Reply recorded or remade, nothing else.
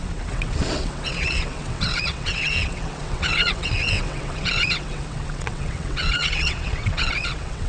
remade